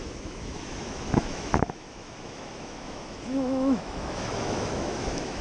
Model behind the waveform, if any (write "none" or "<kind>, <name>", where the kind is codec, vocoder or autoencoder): autoencoder, DAC-VAE